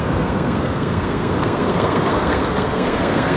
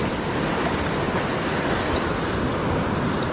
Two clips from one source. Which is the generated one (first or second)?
first